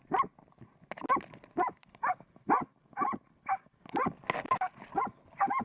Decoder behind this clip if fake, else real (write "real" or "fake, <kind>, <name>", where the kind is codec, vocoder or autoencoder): real